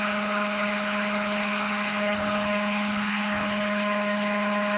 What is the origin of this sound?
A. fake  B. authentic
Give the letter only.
A